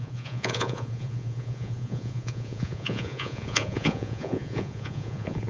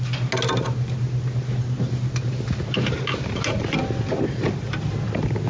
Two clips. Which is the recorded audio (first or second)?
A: second